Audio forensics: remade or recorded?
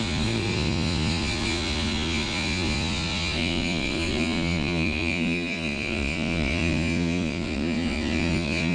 remade